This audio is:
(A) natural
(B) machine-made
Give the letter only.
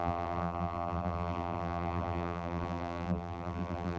B